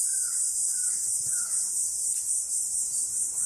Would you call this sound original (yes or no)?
yes